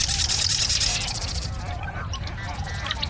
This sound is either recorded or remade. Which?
recorded